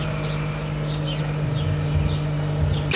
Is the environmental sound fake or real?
real